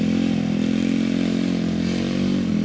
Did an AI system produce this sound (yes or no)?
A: no